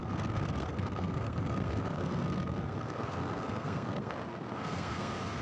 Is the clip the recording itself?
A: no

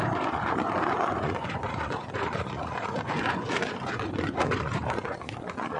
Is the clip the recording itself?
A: no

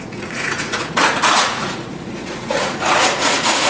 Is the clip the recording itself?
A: no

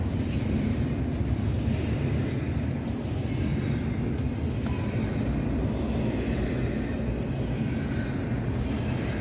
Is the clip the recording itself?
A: yes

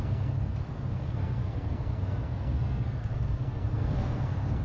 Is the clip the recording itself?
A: no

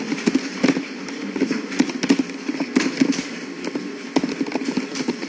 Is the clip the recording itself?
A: yes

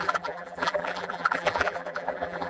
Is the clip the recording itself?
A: no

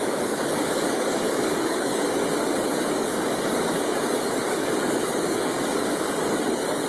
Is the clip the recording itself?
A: no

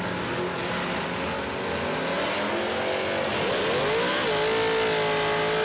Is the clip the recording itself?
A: yes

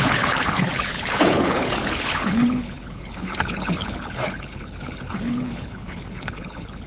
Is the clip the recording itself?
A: no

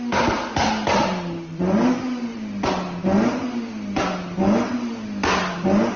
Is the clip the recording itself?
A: yes